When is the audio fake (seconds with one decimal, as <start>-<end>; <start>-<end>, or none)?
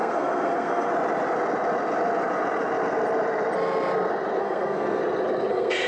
0.0-0.9; 4.4-5.0; 5.5-5.9